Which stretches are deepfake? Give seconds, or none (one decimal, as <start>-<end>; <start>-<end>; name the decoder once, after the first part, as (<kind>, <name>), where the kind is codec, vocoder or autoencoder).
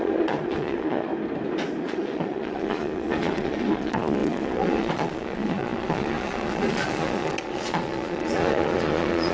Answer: 0.0-1.1 (vocoder, Vocos); 1.8-9.3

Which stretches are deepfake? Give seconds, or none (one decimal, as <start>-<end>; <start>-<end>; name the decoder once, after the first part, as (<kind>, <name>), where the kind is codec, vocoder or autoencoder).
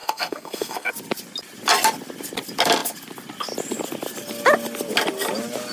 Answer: 0.0-0.9 (codec, SNAC)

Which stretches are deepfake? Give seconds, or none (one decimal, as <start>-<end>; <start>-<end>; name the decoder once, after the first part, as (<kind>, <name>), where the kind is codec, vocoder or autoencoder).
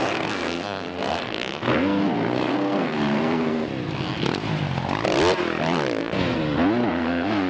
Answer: 0.0-3.7 (codec, SNAC); 6.0-6.4; 6.9-7.5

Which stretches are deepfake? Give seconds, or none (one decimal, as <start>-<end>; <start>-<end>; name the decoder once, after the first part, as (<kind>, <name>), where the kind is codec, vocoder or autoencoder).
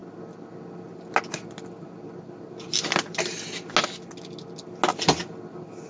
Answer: none